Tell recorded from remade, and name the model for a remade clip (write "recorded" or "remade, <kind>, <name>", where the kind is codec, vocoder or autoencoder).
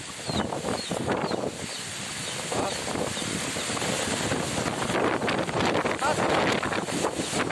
recorded